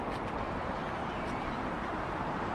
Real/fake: fake